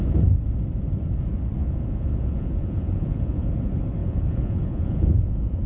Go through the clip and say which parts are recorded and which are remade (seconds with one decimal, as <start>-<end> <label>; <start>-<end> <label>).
0.0-1.6 recorded; 1.6-3.5 remade; 3.5-4.0 recorded; 4.0-5.7 remade